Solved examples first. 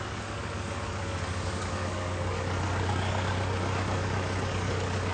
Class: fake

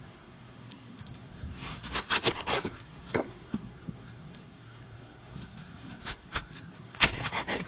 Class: fake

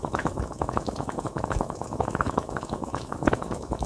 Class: fake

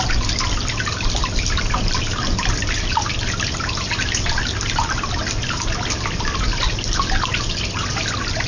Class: real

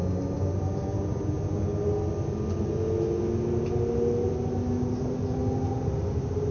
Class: real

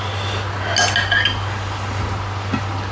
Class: real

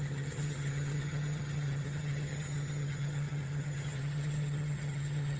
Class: fake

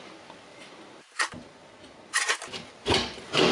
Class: real